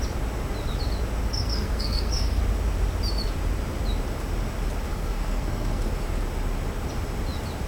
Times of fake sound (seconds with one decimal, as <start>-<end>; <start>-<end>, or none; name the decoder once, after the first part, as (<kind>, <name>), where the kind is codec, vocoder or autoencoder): 1.3-2.4 (codec, SNAC); 4.9-5.9